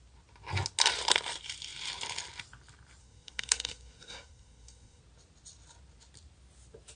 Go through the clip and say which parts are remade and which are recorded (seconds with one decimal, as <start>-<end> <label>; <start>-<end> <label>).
0.0-3.0 recorded; 3.0-5.0 remade; 5.0-7.0 recorded